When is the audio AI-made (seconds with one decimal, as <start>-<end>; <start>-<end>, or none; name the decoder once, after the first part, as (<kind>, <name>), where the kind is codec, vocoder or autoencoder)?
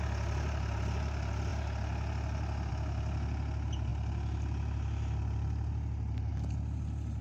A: none